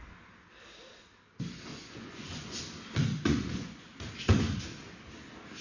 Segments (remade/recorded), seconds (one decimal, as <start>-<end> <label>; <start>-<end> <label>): 0.0-1.7 recorded; 1.7-2.6 remade; 2.6-3.1 recorded; 3.1-3.8 remade; 3.8-5.6 recorded